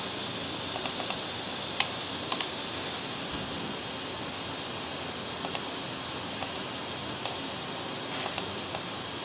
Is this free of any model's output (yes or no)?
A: yes